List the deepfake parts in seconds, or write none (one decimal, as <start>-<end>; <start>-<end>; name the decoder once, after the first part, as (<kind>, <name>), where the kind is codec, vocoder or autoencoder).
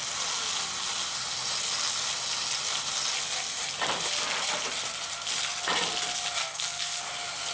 6.4-7.0 (codec, SNAC)